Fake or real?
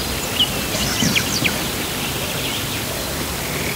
real